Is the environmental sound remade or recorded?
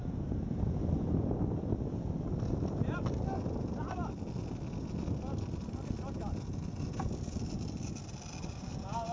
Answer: recorded